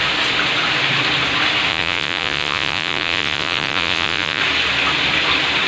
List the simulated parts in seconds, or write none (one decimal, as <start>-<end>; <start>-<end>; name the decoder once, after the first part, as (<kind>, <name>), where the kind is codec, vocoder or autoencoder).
1.7-4.4 (vocoder, Vocos)